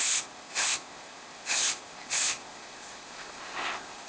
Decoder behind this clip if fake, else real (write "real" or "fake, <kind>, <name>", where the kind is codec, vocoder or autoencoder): fake, codec, ZipCodec